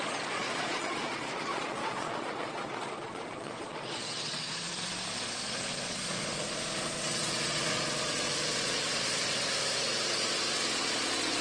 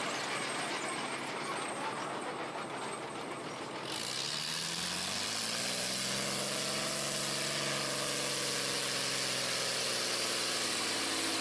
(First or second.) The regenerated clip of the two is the first